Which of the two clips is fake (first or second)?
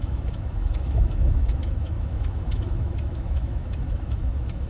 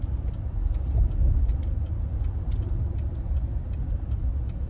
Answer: first